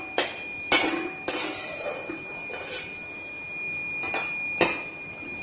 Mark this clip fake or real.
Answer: real